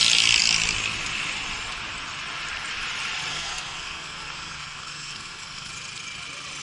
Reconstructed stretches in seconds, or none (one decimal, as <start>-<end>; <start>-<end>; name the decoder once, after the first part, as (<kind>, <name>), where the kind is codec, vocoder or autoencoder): 3.3-5.7 (codec, SNAC)